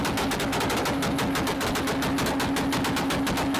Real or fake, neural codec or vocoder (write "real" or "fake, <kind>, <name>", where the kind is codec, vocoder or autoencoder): real